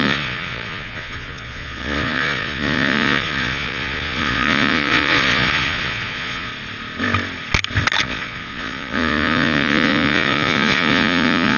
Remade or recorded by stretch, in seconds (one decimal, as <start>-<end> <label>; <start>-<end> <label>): 0.0-6.5 remade; 6.5-8.0 recorded; 8.0-11.6 remade